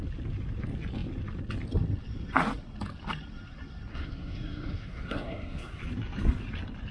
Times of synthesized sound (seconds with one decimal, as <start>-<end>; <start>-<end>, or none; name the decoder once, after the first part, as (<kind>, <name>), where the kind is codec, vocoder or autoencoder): 3.9-5.8 (codec, SNAC)